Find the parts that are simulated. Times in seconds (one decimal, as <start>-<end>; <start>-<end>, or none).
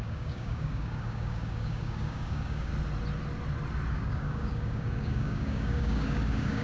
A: 0.0-2.7; 3.9-6.6